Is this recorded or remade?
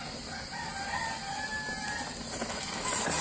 recorded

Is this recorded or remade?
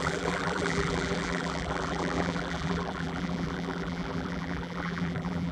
remade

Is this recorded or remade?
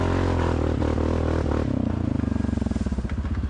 recorded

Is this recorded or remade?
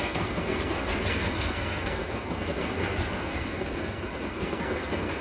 remade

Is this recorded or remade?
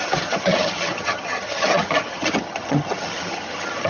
remade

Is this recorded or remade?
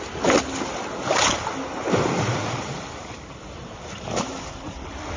recorded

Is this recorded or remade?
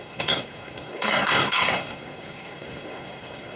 remade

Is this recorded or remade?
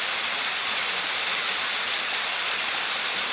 recorded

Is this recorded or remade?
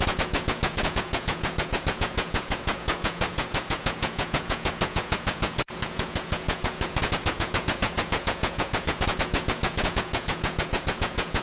remade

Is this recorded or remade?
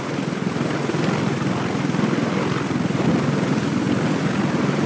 recorded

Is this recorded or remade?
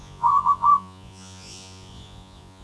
remade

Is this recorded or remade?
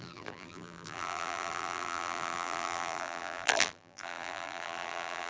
remade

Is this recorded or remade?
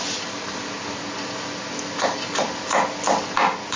recorded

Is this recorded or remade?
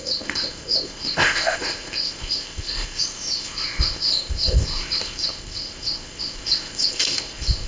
remade